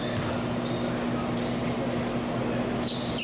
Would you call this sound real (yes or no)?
yes